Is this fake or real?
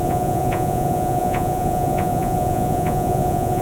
fake